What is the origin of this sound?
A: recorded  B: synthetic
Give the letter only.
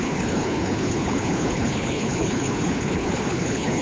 B